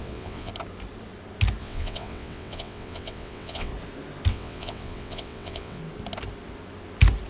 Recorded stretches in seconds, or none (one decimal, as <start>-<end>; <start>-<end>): 0.5-1.6; 3.7-4.3; 5.8-7.3